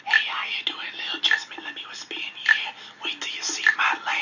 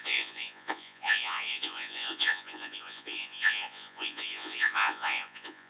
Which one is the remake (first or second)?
second